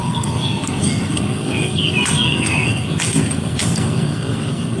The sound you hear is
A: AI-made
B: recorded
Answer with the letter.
A